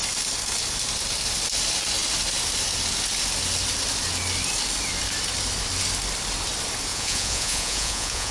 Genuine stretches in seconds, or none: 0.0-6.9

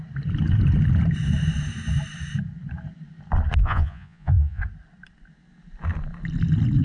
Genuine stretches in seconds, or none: 0.0-3.6; 4.6-6.8

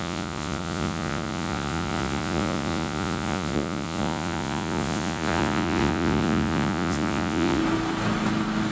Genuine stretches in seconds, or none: 7.6-8.7

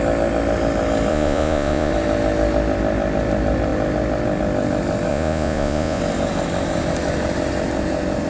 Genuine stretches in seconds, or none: 0.0-1.1; 1.9-5.1; 6.0-8.3